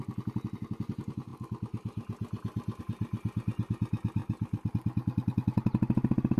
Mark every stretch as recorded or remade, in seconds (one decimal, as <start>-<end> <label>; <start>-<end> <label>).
0.0-6.4 recorded